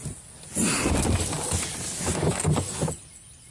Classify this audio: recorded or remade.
recorded